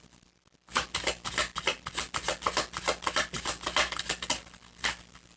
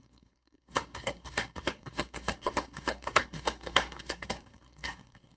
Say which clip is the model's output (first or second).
second